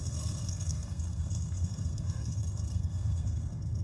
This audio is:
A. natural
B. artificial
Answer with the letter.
B